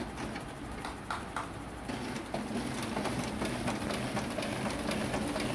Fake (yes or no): no